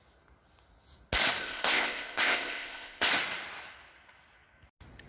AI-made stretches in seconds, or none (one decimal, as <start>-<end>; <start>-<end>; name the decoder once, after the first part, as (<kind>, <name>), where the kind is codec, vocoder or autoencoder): 1.4-3.1 (codec, ZipCodec)